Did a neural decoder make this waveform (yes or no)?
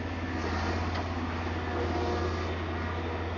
no